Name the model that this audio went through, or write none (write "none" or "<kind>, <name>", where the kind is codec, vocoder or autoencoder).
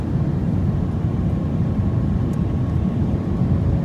vocoder, BigVGAN v2